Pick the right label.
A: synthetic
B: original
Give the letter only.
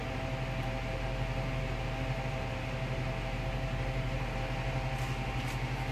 B